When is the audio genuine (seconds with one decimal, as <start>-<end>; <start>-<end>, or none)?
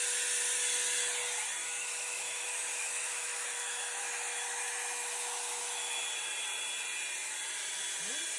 0.0-1.6; 6.0-8.4